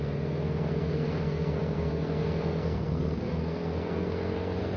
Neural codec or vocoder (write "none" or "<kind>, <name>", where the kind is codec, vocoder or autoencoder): codec, SNAC